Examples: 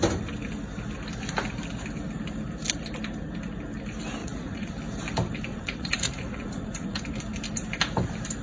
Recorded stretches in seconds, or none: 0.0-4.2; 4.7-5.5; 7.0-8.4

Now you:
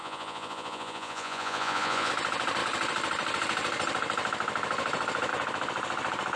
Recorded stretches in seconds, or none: 2.1-6.4

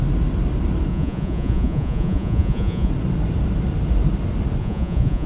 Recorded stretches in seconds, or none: 0.0-0.9; 2.9-4.6

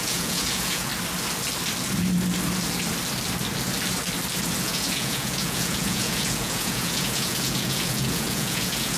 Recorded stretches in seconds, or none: 0.9-4.6

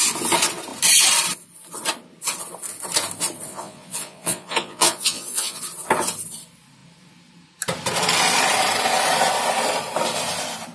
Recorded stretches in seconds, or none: 0.0-3.5; 5.6-10.7

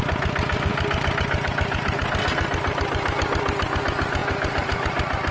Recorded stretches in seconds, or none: 0.0-5.3